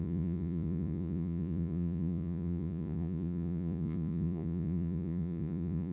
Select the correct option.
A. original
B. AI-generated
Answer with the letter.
B